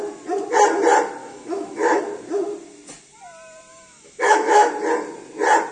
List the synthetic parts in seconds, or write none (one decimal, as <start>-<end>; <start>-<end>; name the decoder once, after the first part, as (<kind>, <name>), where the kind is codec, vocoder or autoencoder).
1.2-2.0 (autoencoder, DAC-VAE); 3.7-4.7